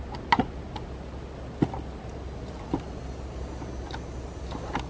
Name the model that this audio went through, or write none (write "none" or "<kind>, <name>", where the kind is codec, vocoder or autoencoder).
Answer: none